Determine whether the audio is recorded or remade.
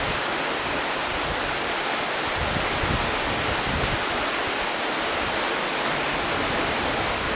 recorded